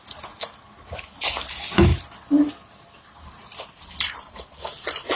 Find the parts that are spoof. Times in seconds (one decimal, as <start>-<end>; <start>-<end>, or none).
none